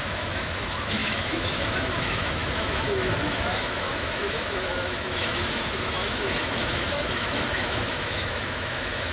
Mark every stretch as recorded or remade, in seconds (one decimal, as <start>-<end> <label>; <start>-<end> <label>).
0.0-9.1 remade